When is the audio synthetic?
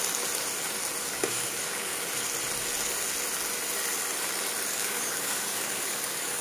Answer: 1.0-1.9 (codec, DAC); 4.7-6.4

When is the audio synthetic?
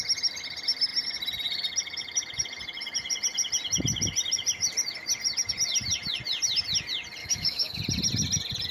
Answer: 7.2-7.8 (autoencoder, DAC-VAE)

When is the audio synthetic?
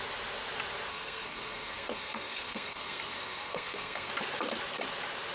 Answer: 0.9-4.1 (codec, SNAC)